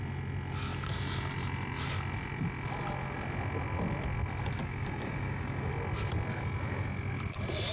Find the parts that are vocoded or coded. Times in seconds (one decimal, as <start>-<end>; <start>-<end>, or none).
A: 4.6-5.7